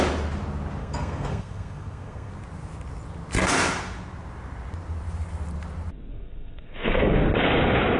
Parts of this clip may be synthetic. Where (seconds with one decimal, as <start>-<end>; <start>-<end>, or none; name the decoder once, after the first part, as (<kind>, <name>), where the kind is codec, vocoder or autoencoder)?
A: 0.8-2.3 (codec, SNAC); 6.1-7.2